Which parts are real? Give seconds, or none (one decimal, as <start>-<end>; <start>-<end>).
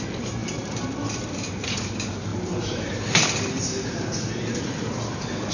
0.0-0.4; 1.8-2.3; 4.6-5.5